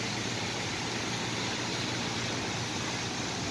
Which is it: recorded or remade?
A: recorded